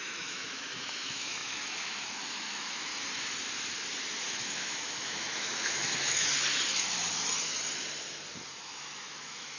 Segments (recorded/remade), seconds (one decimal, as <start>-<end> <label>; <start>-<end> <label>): 0.0-2.9 remade; 2.9-4.3 recorded; 4.3-6.3 remade; 6.3-8.6 recorded; 8.6-9.6 remade